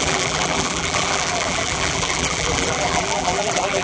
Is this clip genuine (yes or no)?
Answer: no